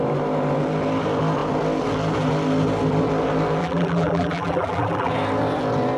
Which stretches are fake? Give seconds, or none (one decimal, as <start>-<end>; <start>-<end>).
3.6-5.1